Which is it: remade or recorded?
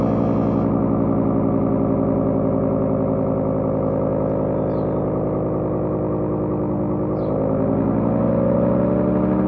recorded